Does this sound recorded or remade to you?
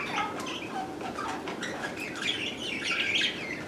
recorded